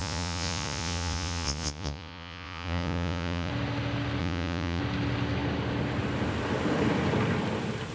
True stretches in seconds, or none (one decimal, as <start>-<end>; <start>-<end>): 3.5-4.2; 4.8-7.9